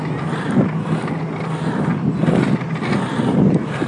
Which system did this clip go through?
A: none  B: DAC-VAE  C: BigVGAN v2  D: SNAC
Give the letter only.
A